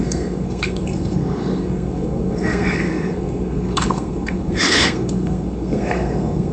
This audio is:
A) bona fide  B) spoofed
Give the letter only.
B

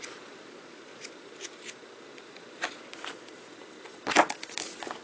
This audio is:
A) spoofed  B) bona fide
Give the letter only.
B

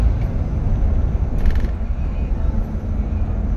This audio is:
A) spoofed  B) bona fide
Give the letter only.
B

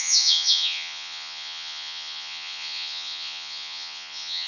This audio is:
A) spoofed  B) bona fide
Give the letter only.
A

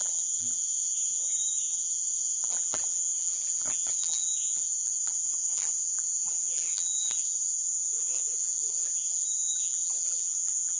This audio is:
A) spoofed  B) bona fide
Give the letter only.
A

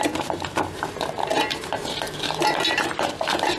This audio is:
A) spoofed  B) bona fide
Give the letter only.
A